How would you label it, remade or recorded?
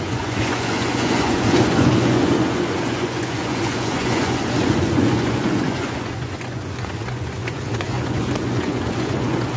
remade